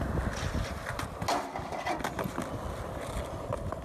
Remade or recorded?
recorded